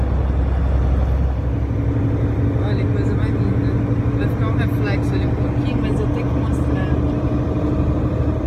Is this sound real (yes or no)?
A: yes